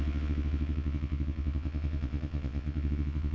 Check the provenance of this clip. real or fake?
fake